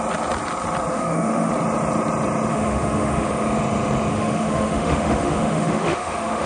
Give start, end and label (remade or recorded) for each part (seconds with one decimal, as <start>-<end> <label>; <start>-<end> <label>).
0.0-0.9 recorded; 0.9-1.5 remade; 1.5-2.5 recorded; 2.5-3.3 remade; 3.3-4.1 recorded; 4.1-6.5 remade